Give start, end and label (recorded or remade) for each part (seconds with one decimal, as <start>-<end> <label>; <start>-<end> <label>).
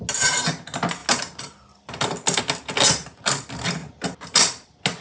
0.0-5.0 recorded